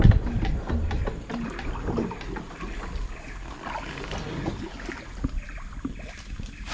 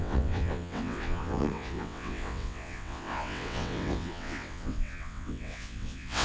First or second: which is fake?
second